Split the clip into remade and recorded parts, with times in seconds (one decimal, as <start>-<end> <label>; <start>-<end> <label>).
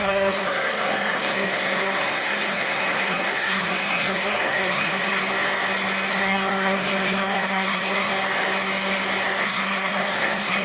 0.0-5.2 remade; 5.2-6.1 recorded; 6.1-8.1 remade; 8.1-9.4 recorded; 9.4-10.6 remade